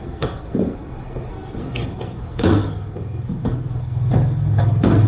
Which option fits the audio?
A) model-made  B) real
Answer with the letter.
A